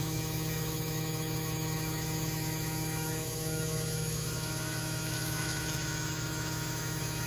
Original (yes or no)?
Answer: no